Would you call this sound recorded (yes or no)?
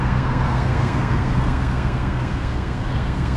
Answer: no